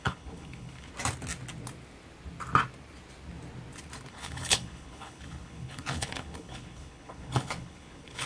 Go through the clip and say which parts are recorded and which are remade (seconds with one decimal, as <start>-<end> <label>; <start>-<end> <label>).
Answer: 0.0-0.9 remade; 0.9-4.1 recorded; 4.1-8.3 remade

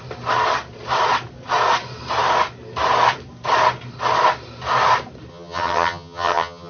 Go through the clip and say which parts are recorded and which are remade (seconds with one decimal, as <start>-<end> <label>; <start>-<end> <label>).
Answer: 0.0-5.3 recorded; 5.3-6.7 remade